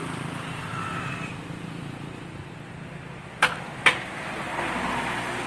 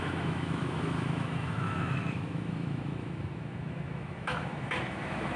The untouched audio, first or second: first